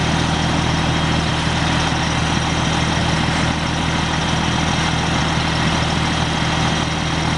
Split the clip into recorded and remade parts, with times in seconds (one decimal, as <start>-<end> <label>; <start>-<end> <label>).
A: 0.0-7.4 recorded